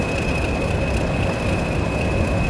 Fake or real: real